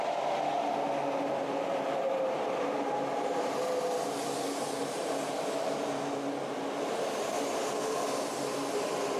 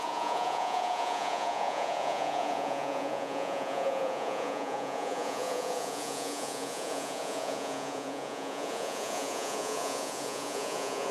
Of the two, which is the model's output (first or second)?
second